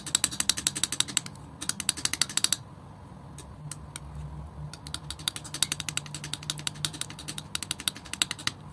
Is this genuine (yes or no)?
yes